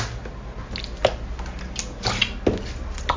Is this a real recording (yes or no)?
yes